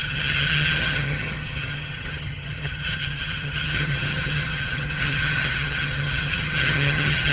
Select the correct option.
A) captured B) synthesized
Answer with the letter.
B